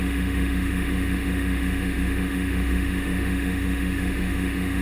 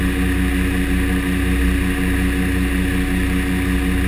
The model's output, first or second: first